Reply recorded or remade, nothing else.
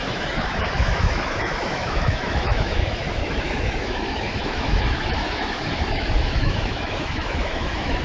remade